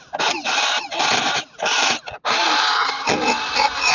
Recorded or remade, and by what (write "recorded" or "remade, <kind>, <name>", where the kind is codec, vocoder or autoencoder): recorded